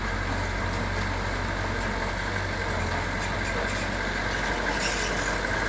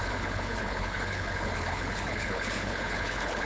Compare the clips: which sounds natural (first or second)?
first